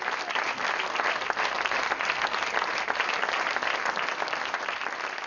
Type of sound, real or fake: real